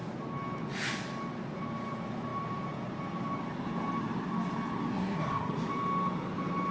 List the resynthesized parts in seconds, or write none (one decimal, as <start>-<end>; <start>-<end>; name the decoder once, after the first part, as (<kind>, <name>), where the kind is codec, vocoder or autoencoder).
4.9-5.5 (codec, SNAC)